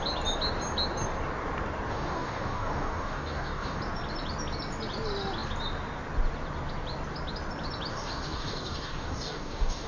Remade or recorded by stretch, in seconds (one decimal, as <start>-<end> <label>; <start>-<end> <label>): 0.0-1.9 recorded; 1.9-3.8 remade; 3.8-7.9 recorded; 7.9-9.9 remade